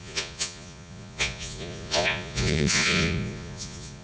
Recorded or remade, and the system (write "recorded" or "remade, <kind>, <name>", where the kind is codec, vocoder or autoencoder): remade, vocoder, Vocos